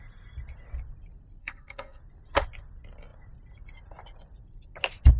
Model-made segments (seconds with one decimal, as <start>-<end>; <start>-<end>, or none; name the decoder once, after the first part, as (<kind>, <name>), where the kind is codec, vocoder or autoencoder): 1.4-2.0 (codec, SNAC)